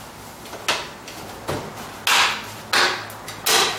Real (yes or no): yes